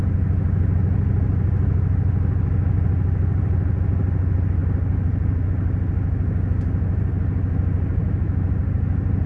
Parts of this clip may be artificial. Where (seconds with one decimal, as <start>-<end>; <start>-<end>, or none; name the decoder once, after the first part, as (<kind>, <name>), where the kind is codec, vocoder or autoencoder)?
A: 8.0-8.5 (autoencoder, DAC-VAE)